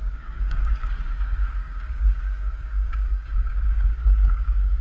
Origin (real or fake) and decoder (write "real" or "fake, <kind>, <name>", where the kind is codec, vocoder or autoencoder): fake, codec, DAC